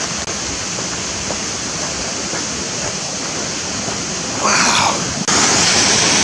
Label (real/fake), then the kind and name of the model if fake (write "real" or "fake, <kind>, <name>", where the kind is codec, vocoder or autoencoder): real